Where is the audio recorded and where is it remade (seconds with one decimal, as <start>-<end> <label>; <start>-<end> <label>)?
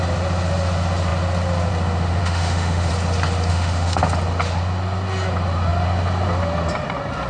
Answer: 0.0-2.2 recorded; 2.2-2.9 remade; 2.9-3.5 recorded; 3.5-4.0 remade; 4.0-7.3 recorded